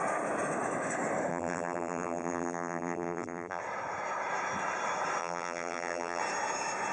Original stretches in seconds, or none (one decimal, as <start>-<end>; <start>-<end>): 0.0-1.3; 3.6-5.2; 6.2-6.9